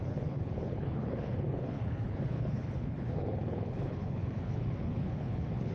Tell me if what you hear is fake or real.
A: fake